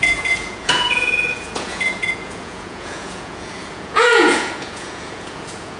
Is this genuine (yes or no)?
no